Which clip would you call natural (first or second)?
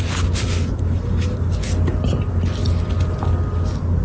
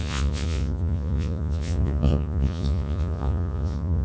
first